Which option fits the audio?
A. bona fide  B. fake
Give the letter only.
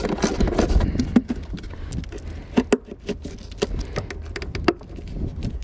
A